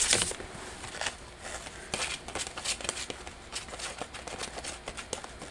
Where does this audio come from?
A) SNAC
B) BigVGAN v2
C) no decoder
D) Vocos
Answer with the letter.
C